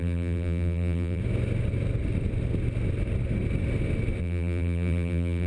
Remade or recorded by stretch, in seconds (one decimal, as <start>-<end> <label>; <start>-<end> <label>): 0.0-1.2 remade; 1.2-4.2 recorded; 4.2-5.5 remade